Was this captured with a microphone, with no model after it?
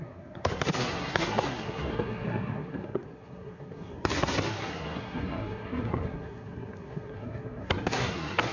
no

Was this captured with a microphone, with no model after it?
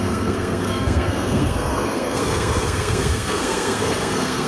no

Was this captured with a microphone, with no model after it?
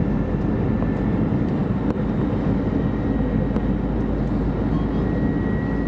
yes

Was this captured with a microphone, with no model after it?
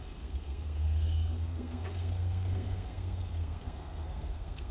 no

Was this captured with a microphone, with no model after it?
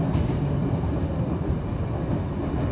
yes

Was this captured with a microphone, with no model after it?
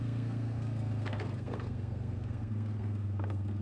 no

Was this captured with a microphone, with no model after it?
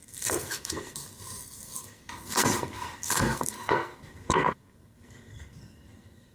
no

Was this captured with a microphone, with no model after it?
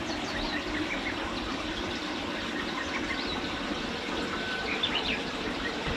yes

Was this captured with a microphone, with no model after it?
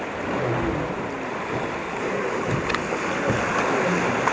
yes